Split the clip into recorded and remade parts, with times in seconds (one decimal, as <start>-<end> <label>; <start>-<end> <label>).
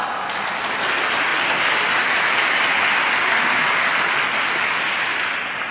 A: 0.0-5.7 recorded